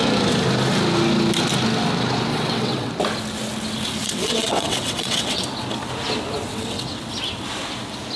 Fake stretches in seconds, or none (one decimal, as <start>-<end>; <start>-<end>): 2.3-2.9; 4.0-5.4; 6.5-7.0